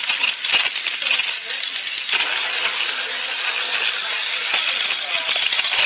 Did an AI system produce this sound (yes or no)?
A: no